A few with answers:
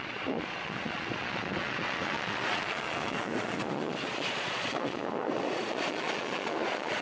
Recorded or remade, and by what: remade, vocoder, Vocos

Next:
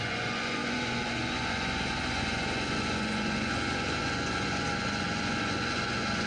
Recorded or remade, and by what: remade, vocoder, Vocos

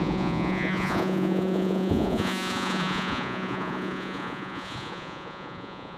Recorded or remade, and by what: remade, vocoder, Vocos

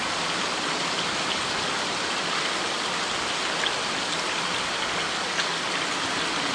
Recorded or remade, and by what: recorded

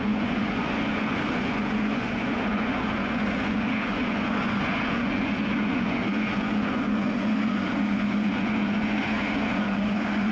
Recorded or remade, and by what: remade, vocoder, Vocos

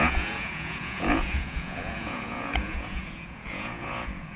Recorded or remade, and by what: remade, vocoder, Vocos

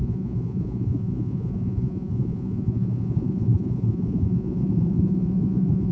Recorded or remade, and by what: remade, vocoder, Vocos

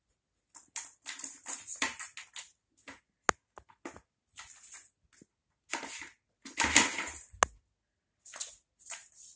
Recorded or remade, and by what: recorded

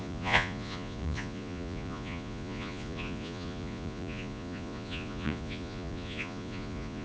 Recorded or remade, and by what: remade, vocoder, Vocos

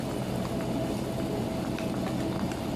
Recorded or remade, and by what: recorded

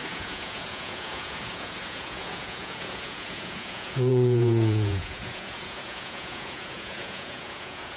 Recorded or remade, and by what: remade, vocoder, Vocos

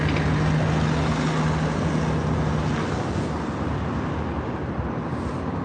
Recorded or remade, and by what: recorded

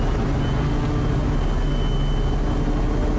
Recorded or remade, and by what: recorded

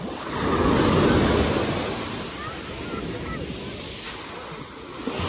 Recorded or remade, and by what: recorded